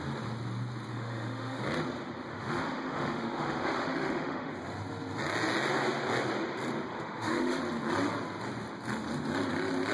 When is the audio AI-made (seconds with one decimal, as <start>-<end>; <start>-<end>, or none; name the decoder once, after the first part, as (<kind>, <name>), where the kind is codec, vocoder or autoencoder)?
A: 0.9-1.6 (autoencoder, DAC-VAE); 2.3-4.5; 6.9-7.6